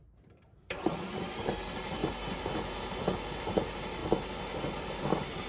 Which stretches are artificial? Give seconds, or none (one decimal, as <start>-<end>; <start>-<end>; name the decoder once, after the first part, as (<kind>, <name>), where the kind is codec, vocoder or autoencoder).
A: 0.0-2.0 (vocoder, BigVGAN v2); 3.4-4.0; 5.0-5.5